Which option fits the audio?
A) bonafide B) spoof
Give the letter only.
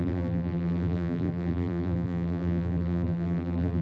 B